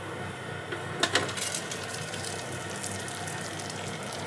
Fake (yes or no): no